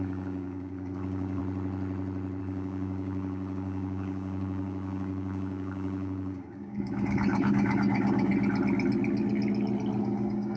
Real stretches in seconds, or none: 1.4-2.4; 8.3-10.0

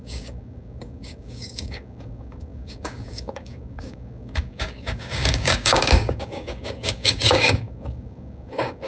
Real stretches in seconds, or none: none

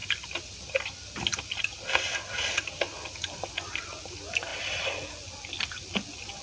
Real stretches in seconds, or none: 0.0-6.4

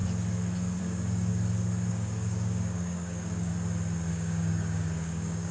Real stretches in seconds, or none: 0.0-0.8; 1.3-1.9; 3.5-4.1

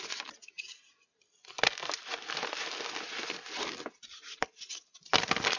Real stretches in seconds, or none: 0.0-5.6

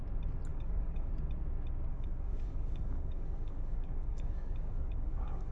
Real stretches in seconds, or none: 0.0-0.5; 1.1-1.9

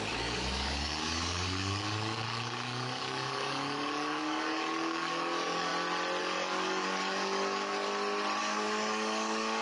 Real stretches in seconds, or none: 5.7-6.2; 7.9-8.4

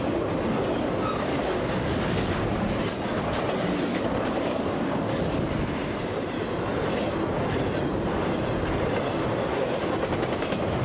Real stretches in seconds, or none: 0.0-1.3; 2.4-3.9; 5.4-10.8